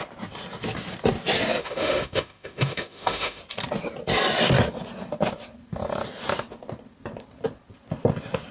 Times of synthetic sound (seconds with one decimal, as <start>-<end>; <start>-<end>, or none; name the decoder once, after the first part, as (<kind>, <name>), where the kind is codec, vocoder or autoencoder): 1.6-3.4 (autoencoder, DAC-VAE)